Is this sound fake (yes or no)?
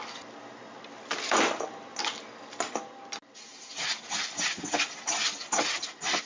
no